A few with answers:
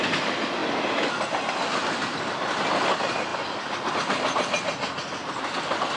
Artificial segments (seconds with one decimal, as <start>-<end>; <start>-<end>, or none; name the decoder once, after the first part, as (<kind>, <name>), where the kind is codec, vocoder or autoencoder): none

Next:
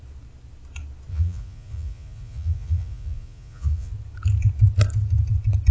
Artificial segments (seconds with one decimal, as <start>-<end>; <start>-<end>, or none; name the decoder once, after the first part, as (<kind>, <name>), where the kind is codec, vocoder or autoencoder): 1.1-3.9 (vocoder, Vocos)

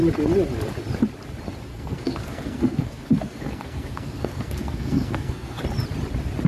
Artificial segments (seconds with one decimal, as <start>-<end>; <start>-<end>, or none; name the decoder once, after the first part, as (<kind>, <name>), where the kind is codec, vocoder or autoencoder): 1.7-5.6 (codec, SNAC)

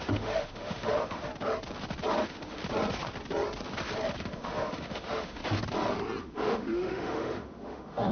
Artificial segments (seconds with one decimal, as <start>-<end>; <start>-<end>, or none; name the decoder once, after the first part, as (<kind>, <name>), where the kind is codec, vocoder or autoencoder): 0.0-1.3 (autoencoder, DAC-VAE); 2.1-2.6; 4.2-5.4; 6.2-8.1